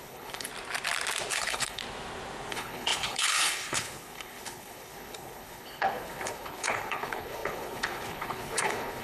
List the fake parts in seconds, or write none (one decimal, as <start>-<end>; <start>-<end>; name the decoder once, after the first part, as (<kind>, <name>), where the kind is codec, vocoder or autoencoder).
0.0-0.5 (codec, HILCodec); 1.3-1.8; 2.5-9.0